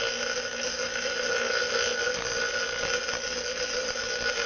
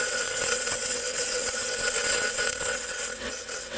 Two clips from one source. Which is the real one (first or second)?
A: first